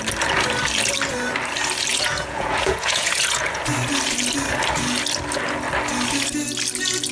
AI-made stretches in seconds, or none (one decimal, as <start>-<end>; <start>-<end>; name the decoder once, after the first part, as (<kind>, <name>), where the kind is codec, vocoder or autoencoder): 1.9-3.6 (vocoder, Vocos)